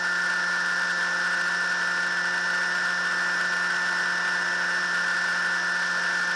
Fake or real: real